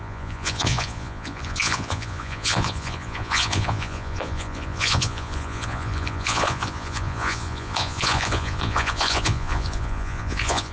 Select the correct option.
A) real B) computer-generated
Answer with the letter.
B